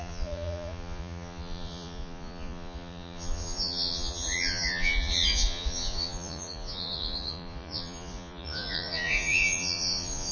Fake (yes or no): yes